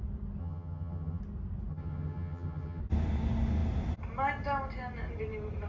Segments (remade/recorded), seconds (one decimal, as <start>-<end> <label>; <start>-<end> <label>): 0.0-0.4 recorded; 0.4-1.2 remade; 1.2-1.7 recorded; 1.7-2.8 remade; 2.8-5.7 recorded